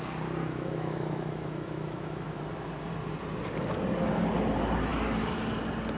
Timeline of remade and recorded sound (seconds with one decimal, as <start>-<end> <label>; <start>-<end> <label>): 0.0-0.4 recorded; 0.4-2.4 remade; 2.4-6.0 recorded